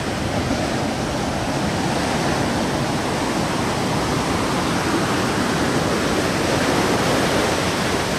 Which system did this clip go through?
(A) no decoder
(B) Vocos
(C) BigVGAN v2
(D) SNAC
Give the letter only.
A